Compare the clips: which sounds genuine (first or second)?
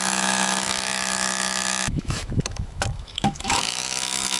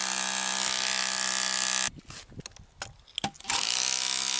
second